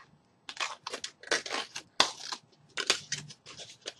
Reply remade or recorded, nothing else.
recorded